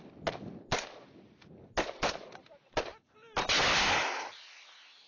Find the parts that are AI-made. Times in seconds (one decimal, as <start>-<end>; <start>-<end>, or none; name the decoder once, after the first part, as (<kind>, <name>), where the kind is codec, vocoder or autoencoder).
none